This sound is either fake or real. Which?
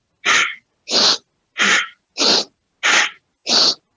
real